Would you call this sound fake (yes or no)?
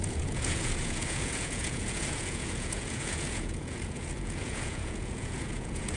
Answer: yes